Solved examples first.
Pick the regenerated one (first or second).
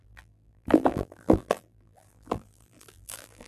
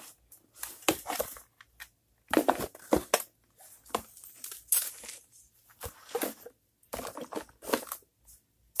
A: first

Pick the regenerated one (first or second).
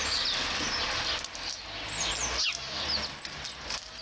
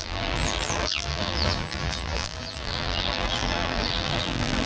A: second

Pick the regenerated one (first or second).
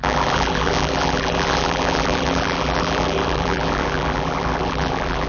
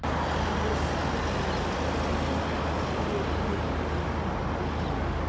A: first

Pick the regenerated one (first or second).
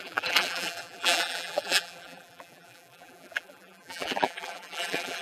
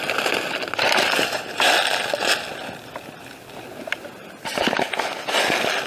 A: first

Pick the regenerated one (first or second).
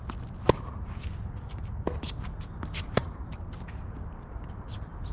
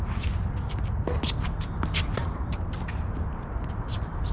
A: first